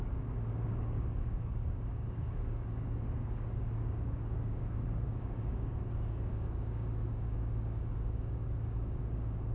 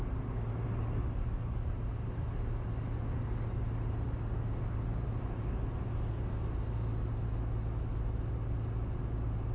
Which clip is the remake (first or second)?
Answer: first